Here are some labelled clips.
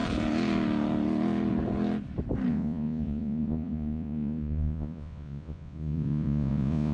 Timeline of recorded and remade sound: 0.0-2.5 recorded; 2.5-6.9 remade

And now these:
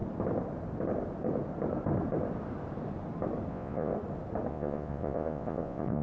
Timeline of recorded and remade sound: 0.0-3.5 recorded; 3.5-3.9 remade; 3.9-4.5 recorded; 4.5-6.0 remade

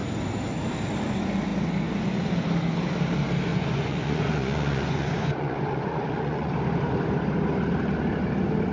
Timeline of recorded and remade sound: 0.0-3.5 recorded; 3.5-6.5 remade; 6.5-8.7 recorded

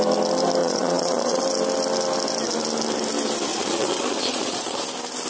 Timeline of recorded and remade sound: 0.0-0.6 recorded; 0.6-1.4 remade; 1.4-3.5 recorded; 3.5-4.8 remade; 4.8-5.3 recorded

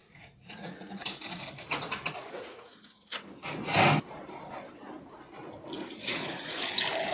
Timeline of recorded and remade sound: 0.0-3.1 remade; 3.1-6.0 recorded; 6.0-6.6 remade; 6.6-7.1 recorded

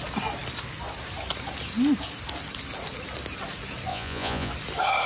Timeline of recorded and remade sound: 0.0-3.9 recorded; 3.9-4.5 remade; 4.5-5.1 recorded

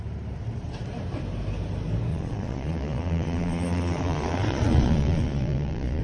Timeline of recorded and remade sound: 0.0-2.1 recorded; 2.1-6.0 remade

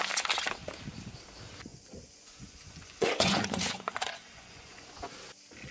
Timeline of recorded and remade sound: 0.0-1.7 recorded; 1.7-5.1 remade; 5.1-5.7 recorded